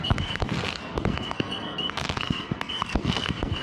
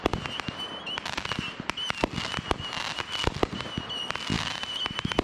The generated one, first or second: first